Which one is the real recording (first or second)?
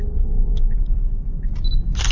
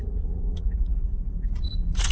first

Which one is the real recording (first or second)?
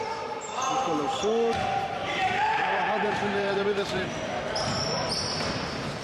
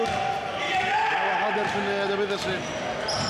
second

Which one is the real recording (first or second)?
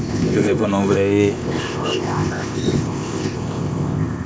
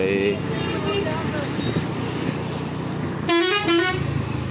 second